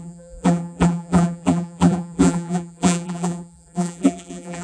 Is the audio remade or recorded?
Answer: remade